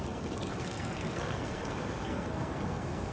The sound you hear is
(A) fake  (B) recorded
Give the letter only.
A